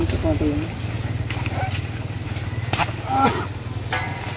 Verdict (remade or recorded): recorded